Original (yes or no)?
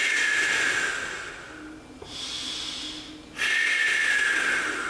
yes